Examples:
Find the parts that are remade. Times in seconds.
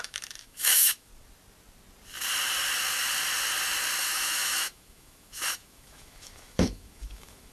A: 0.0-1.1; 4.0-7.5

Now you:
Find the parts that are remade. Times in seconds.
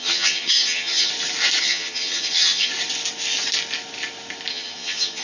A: 0.0-1.1; 1.6-2.7; 4.5-5.2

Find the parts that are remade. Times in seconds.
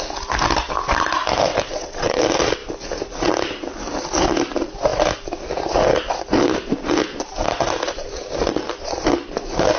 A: 1.5-2.2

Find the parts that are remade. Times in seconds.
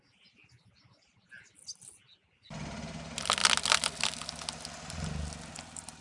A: none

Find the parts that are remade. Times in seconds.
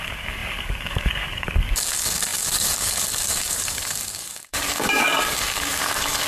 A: 0.0-6.3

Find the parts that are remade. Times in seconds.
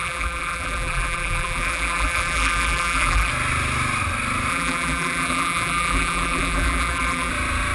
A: 0.0-3.3; 4.5-7.3